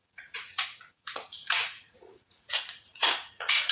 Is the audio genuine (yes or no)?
no